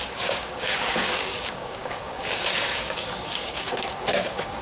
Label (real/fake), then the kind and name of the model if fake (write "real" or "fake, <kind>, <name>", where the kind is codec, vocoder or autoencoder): fake, codec, DAC